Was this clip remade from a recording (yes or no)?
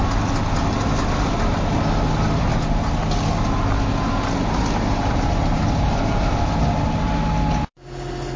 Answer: no